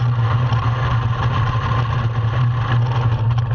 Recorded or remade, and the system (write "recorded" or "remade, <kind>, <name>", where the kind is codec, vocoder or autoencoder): recorded